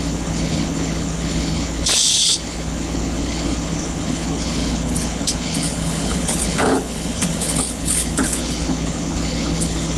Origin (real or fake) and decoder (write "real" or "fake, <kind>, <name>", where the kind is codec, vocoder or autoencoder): fake, codec, HILCodec